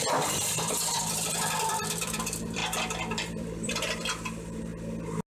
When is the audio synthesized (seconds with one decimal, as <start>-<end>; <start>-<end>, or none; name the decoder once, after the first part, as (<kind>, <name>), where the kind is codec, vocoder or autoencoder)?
0.0-2.6 (vocoder, BigVGAN v2); 3.3-4.7

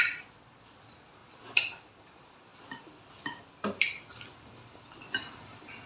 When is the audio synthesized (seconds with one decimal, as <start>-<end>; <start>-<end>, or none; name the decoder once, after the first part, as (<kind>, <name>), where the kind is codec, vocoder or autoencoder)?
0.0-1.2 (vocoder, BigVGAN v2); 2.0-5.9

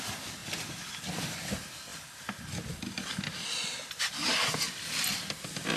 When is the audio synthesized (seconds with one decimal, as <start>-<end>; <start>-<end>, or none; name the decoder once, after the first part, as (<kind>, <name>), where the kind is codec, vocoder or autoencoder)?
none